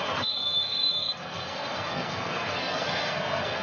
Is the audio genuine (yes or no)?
no